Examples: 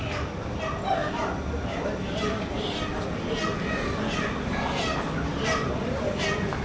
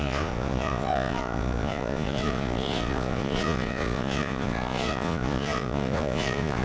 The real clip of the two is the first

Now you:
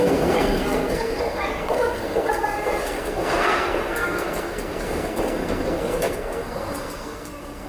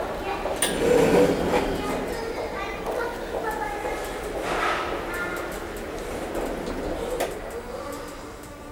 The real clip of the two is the second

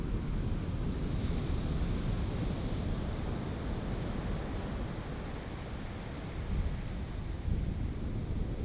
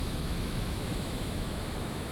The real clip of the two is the first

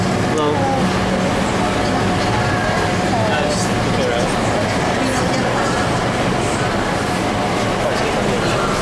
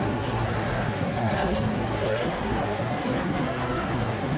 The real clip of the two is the first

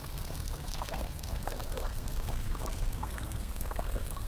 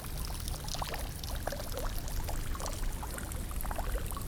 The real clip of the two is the second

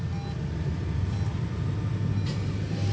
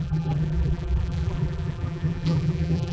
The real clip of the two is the first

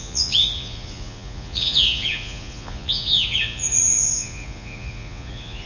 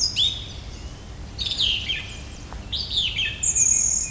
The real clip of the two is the second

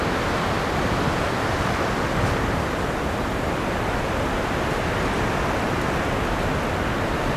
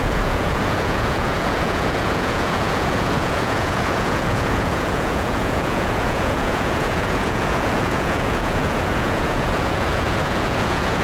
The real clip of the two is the first